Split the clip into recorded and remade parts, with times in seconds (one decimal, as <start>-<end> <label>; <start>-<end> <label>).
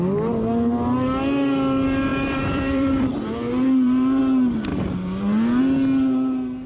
0.0-2.1 recorded; 2.1-4.2 remade; 4.2-6.7 recorded